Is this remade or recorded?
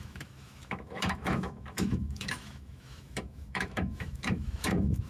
remade